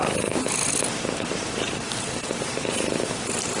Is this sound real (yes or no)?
no